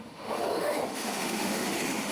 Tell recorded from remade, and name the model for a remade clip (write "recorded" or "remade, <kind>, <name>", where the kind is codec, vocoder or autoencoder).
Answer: remade, autoencoder, DAC-VAE